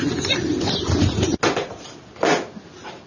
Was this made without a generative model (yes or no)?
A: yes